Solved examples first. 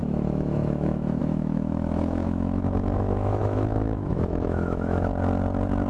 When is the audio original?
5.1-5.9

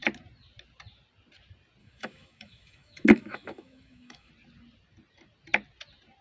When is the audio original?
0.0-1.8; 4.3-6.2

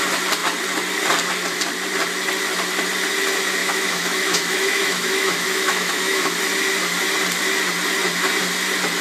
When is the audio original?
0.0-3.6; 6.2-9.0

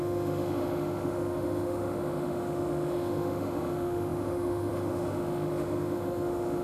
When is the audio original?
none

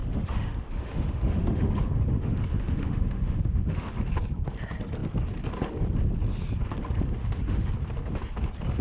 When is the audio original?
4.1-7.2; 7.7-8.8

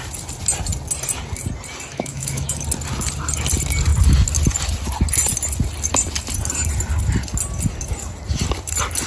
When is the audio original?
0.0-1.9; 2.6-9.1

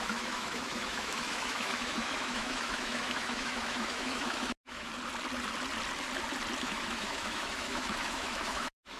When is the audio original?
4.9-6.6

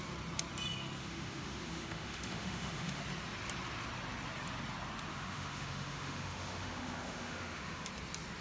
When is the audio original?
0.0-1.0; 3.0-5.1; 7.9-8.4